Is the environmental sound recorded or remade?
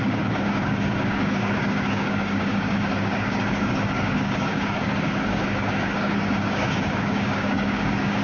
remade